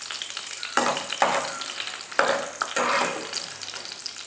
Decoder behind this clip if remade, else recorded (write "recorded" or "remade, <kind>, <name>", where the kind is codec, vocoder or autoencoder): recorded